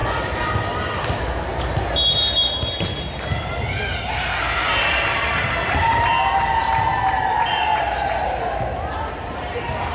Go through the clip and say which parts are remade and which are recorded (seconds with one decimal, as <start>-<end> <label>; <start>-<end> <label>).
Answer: 0.0-5.2 recorded; 5.2-6.1 remade; 6.1-7.2 recorded; 7.2-9.9 remade